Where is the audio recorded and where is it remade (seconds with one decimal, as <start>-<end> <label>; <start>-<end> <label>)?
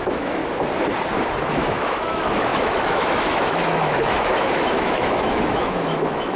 0.0-0.4 remade; 0.4-1.5 recorded; 1.5-6.4 remade